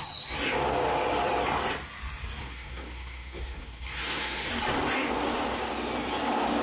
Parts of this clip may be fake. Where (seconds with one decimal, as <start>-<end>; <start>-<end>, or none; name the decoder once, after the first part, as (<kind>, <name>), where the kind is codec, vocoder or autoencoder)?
2.4-4.5 (codec, SNAC)